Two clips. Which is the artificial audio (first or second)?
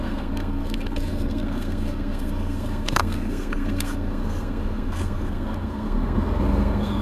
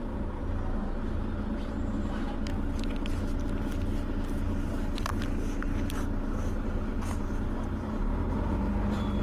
first